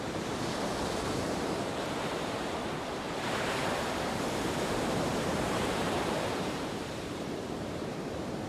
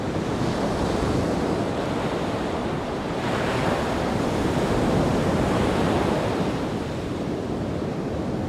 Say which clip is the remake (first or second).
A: first